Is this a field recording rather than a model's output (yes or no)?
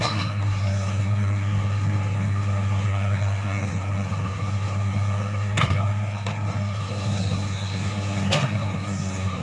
no